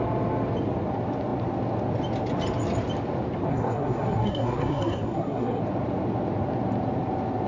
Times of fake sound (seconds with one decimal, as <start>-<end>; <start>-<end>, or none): 3.5-5.6